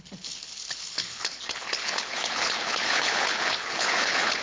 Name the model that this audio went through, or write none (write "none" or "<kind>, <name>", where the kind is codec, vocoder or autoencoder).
codec, HILCodec